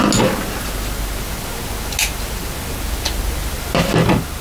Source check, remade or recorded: recorded